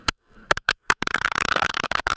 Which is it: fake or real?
fake